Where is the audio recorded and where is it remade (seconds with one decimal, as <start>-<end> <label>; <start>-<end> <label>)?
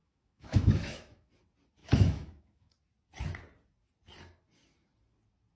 0.0-1.3 remade; 1.3-1.8 recorded; 1.8-2.7 remade; 2.7-5.6 recorded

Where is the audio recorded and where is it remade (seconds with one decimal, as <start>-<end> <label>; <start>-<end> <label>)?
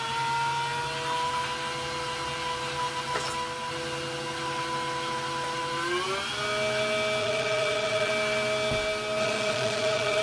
0.0-7.2 recorded; 7.2-8.1 remade; 8.1-9.2 recorded; 9.2-10.2 remade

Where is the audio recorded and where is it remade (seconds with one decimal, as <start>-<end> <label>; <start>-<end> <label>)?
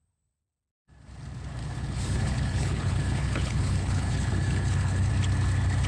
0.0-1.6 recorded; 1.6-5.1 remade; 5.1-5.9 recorded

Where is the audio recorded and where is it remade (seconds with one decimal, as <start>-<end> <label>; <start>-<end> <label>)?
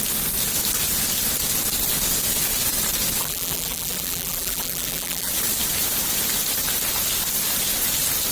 0.0-3.2 recorded; 3.2-5.3 remade; 5.3-8.3 recorded